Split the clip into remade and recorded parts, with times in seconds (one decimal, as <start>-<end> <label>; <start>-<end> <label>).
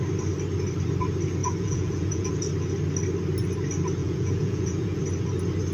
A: 0.0-1.4 recorded; 1.4-2.3 remade; 2.3-4.0 recorded; 4.0-5.0 remade; 5.0-5.7 recorded